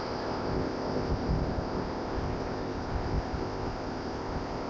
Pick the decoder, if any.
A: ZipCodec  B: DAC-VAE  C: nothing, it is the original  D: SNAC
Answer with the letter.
A